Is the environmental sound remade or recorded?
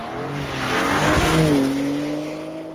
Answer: recorded